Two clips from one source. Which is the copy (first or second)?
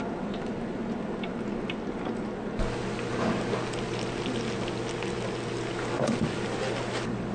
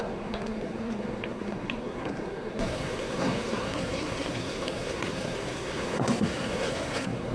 second